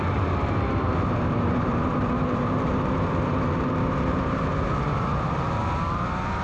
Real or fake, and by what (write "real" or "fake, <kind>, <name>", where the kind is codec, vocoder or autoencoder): fake, vocoder, BigVGAN v2